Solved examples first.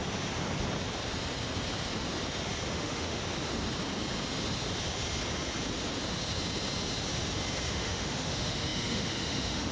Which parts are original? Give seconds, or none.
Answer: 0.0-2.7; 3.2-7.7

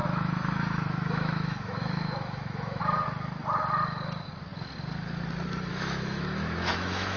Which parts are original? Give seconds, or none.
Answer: 2.8-5.7